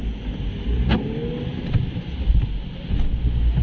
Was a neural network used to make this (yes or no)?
no